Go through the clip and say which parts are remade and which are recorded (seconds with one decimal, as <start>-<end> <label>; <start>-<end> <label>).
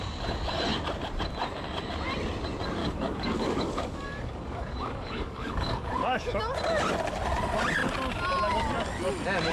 0.0-2.8 recorded; 2.8-6.4 remade; 6.4-9.5 recorded